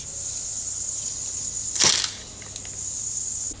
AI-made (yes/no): no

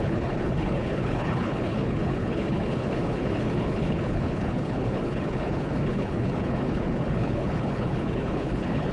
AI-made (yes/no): yes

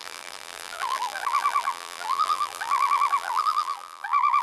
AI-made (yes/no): yes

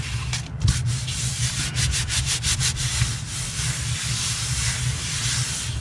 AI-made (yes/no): no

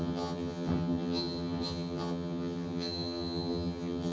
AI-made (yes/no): yes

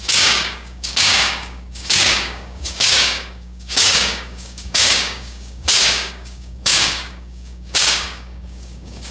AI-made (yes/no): yes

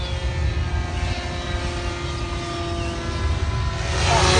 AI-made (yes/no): no